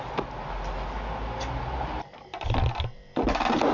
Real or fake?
real